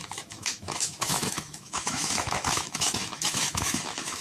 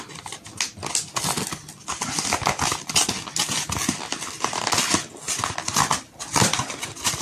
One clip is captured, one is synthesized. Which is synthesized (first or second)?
first